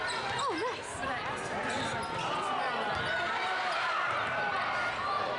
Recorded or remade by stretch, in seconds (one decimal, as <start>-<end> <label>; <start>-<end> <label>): 0.0-5.4 recorded